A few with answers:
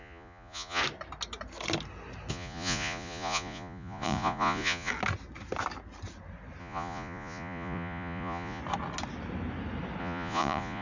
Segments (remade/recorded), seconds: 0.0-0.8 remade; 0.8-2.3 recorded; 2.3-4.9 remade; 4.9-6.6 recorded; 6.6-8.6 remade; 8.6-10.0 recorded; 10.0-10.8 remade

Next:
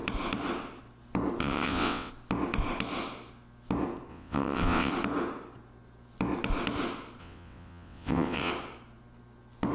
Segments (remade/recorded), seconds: 0.0-1.4 recorded; 1.4-2.1 remade; 2.1-4.1 recorded; 4.1-4.9 remade; 4.9-7.2 recorded; 7.2-8.5 remade; 8.5-9.7 recorded

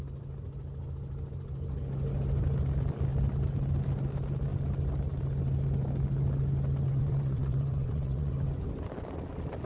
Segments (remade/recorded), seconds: 0.0-6.9 recorded; 6.9-8.3 remade; 8.3-9.7 recorded

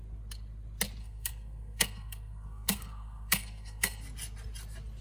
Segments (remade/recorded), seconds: 0.0-1.0 recorded; 1.0-4.0 remade; 4.0-5.0 recorded

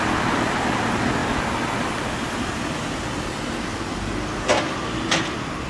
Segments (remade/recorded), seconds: 0.0-5.7 recorded

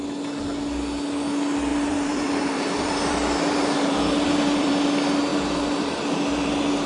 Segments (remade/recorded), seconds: 0.0-1.7 recorded; 1.7-4.7 remade; 4.7-5.3 recorded; 5.3-6.5 remade; 6.5-6.9 recorded

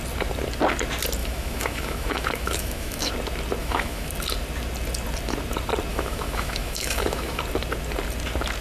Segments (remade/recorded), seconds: 0.0-1.2 recorded; 1.2-3.1 remade; 3.1-3.6 recorded; 3.6-4.1 remade; 4.1-5.9 recorded; 5.9-7.4 remade; 7.4-8.6 recorded